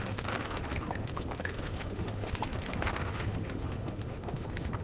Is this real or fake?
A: fake